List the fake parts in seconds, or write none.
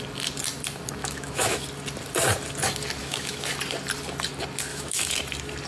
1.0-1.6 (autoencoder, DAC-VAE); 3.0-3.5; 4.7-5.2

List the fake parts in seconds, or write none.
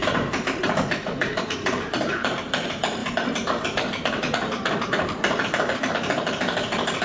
0.0-7.0 (vocoder, BigVGAN v2)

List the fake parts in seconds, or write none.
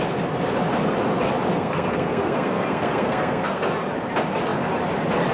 1.5-3.6 (codec, SNAC)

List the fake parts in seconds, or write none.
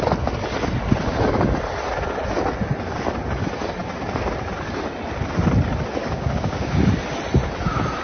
6.0-6.8 (codec, DAC)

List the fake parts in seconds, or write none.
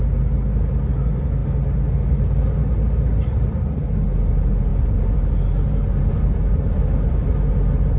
4.7-7.5 (vocoder, BigVGAN v2)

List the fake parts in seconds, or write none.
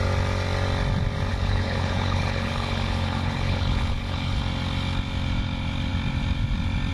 1.3-4.4 (codec, HILCodec)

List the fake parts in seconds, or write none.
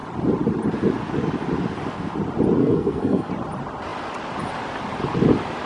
2.6-3.3 (codec, SNAC)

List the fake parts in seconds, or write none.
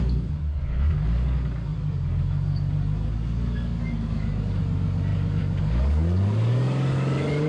0.0-7.5 (codec, DAC)